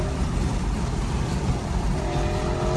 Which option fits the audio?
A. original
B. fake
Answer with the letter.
B